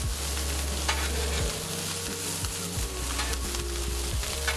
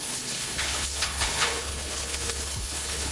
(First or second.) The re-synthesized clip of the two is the second